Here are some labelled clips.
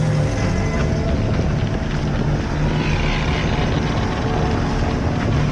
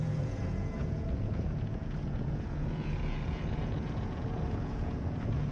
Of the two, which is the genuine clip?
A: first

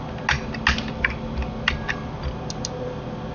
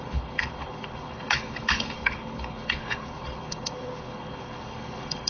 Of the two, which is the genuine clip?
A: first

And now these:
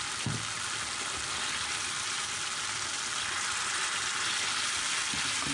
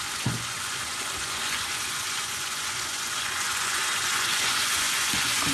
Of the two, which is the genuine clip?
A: first